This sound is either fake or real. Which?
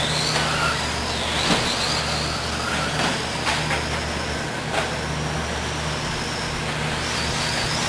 real